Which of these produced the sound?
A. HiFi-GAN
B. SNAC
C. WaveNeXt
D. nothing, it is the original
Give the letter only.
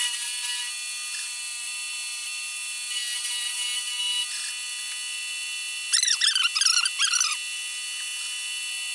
D